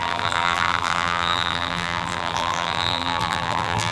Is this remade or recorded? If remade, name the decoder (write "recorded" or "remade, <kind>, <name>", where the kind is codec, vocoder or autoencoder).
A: remade, vocoder, BigVGAN v2